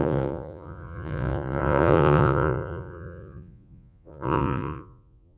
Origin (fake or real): fake